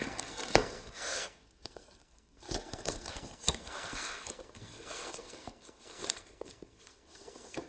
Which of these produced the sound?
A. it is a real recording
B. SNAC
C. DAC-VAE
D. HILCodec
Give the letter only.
B